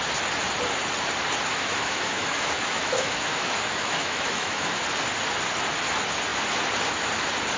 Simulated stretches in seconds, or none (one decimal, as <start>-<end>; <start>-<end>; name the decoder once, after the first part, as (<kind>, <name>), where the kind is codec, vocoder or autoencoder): 1.5-4.8 (autoencoder, DAC-VAE)